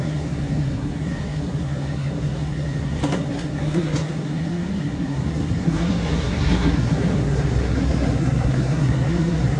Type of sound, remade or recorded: remade